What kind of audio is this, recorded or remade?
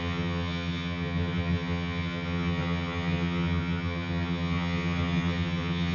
remade